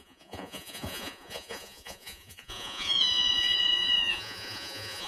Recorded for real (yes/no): no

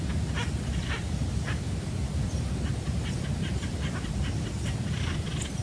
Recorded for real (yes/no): yes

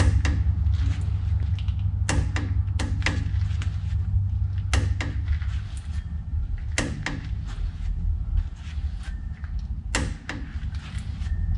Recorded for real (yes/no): yes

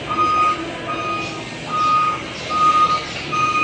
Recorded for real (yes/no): yes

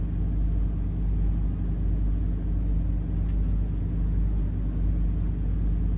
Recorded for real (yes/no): yes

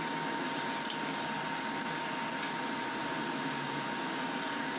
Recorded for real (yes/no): yes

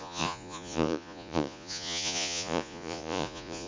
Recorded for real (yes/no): no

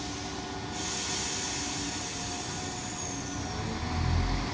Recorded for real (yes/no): yes